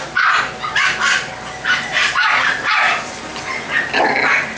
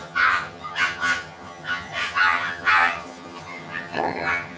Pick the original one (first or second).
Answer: first